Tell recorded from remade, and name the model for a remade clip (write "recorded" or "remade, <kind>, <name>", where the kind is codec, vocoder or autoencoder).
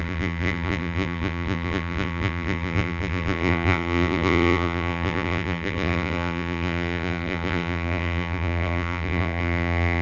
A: remade, vocoder, BigVGAN v2